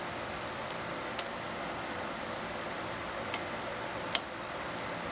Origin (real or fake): real